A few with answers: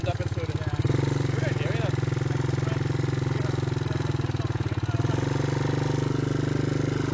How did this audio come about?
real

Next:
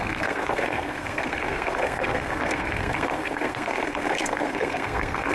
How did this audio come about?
fake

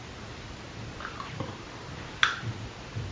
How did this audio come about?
real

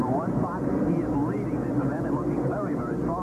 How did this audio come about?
fake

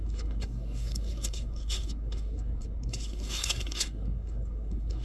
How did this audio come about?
fake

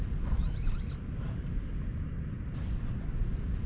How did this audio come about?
real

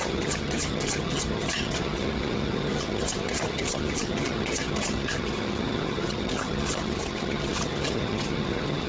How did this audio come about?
fake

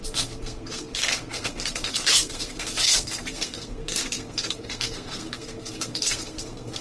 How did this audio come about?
fake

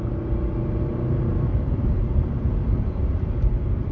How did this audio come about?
fake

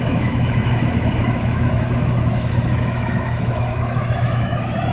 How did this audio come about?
fake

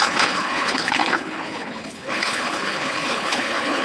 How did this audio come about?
fake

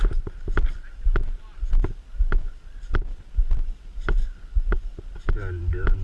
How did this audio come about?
real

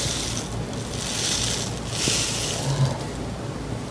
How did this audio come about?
real